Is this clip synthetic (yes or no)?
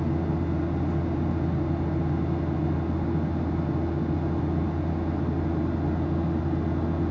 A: no